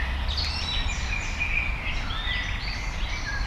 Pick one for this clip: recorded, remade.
recorded